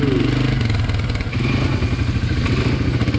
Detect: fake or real real